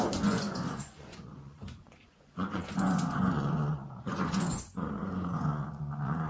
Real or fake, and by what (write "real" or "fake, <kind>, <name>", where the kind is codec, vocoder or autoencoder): fake, vocoder, Vocos